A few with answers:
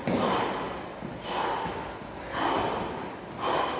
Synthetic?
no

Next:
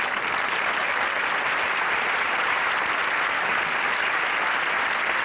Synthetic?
no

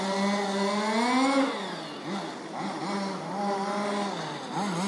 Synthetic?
no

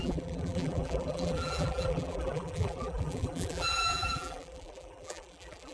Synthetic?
yes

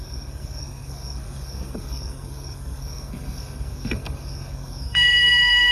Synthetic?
yes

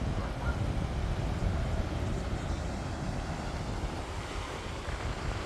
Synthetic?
no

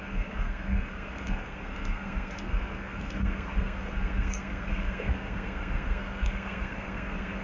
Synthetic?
yes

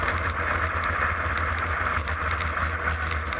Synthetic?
no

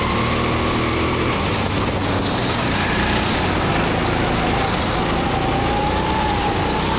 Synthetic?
no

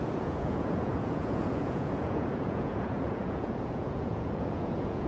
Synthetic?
yes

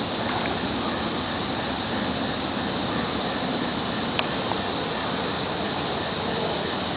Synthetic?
no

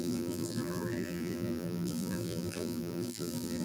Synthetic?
yes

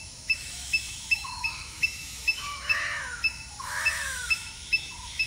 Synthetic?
yes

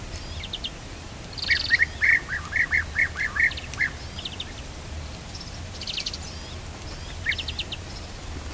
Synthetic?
no